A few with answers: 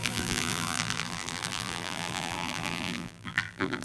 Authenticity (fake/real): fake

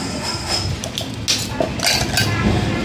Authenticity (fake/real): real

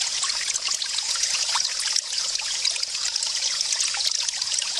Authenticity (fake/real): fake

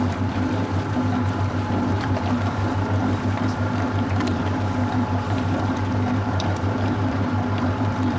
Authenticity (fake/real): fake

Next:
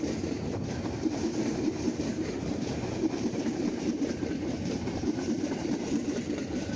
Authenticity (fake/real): fake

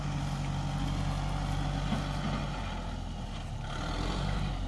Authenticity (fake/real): real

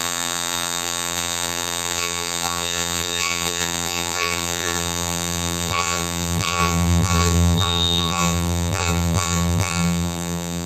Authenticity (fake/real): fake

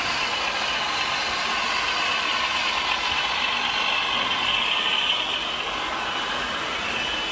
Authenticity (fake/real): real